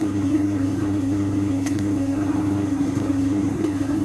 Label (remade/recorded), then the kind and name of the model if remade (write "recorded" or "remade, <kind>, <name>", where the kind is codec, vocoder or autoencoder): remade, codec, SNAC